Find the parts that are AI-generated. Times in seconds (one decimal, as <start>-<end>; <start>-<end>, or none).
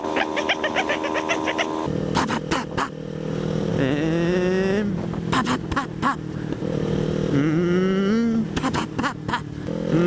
none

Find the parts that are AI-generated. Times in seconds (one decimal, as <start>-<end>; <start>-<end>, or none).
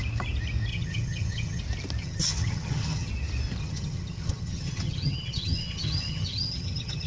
0.7-1.6; 2.0-3.1; 3.6-7.1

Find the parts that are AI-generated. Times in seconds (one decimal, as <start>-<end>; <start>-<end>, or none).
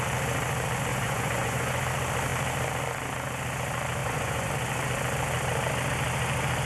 0.9-1.8; 4.0-4.5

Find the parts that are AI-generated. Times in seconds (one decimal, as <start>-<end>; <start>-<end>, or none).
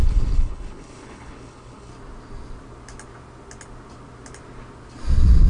0.0-1.9